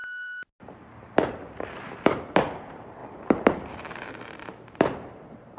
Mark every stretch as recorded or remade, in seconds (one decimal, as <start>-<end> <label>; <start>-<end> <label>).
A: 0.0-0.6 recorded; 0.6-5.6 remade

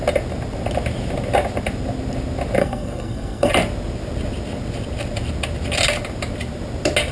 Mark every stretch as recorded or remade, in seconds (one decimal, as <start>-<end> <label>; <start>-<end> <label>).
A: 0.0-2.6 recorded; 2.6-3.5 remade; 3.5-7.1 recorded

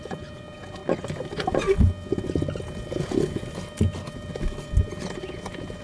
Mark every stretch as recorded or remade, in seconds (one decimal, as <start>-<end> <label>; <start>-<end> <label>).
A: 0.0-0.8 remade; 0.8-2.6 recorded; 2.6-3.4 remade; 3.4-5.2 recorded; 5.2-5.8 remade

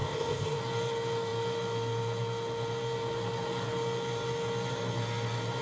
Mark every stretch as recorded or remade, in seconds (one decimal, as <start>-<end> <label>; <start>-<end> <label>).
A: 0.0-0.6 remade; 0.6-5.6 recorded